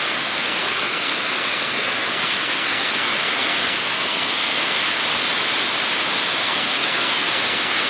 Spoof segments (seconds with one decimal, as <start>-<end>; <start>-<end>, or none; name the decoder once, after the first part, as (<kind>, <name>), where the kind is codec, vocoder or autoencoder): 0.0-5.0 (codec, SNAC); 6.4-7.9

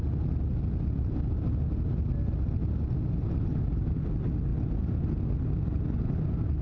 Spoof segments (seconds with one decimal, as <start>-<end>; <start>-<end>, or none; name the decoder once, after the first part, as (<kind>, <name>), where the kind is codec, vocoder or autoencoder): none

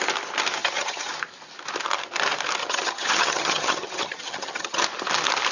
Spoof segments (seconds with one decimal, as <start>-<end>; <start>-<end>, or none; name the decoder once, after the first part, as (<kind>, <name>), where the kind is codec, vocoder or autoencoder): 0.6-1.1 (vocoder, HiFi-GAN); 2.6-4.8

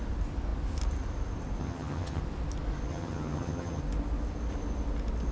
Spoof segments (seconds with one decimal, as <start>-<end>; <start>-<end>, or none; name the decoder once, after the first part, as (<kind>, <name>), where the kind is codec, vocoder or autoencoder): 1.6-2.2 (vocoder, HiFi-GAN); 2.9-3.8

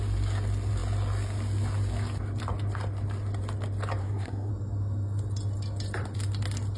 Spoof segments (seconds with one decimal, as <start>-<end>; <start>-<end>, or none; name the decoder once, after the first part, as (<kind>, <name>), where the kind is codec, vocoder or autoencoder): 4.0-4.5 (codec, SNAC)

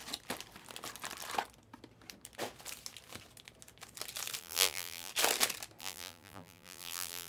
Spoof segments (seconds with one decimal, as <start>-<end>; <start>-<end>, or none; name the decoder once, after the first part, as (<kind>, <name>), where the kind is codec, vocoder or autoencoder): 4.4-5.1 (vocoder, BigVGAN v2); 5.8-7.3